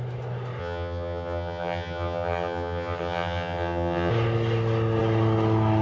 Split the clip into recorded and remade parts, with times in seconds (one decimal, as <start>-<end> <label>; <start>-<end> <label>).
0.0-0.6 recorded; 0.6-4.1 remade; 4.1-5.8 recorded